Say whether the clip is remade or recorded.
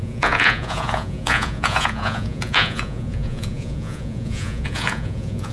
remade